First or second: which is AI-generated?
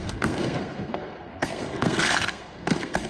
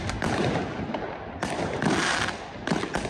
first